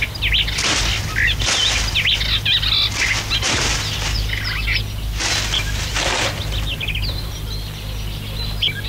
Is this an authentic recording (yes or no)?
yes